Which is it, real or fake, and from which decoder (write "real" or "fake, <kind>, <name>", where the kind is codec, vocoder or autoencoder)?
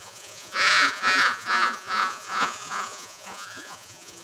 fake, vocoder, Vocos